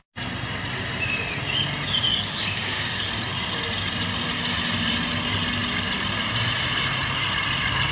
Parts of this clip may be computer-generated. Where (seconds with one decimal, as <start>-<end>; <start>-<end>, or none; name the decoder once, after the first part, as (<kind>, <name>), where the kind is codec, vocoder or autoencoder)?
2.1-3.1 (codec, DAC)